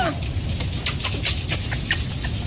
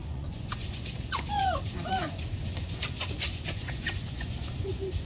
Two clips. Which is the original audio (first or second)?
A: first